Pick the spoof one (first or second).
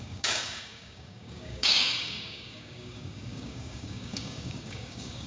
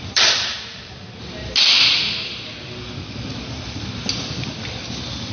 first